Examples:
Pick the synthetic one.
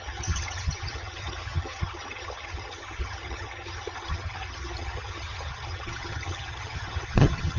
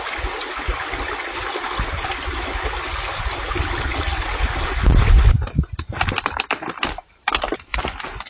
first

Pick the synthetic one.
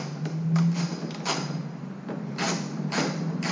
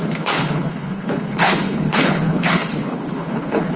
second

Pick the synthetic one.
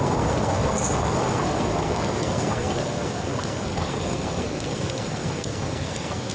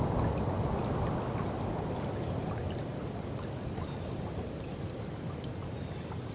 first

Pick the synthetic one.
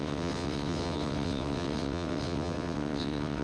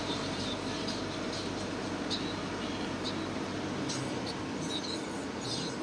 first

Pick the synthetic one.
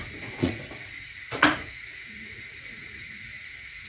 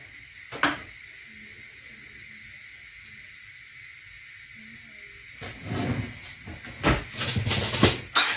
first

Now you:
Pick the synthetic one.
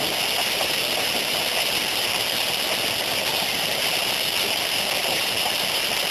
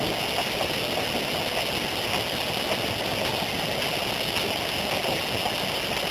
first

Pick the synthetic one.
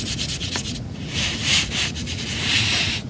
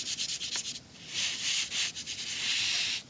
first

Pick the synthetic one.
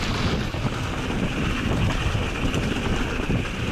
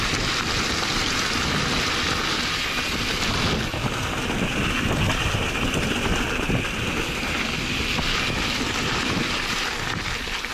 first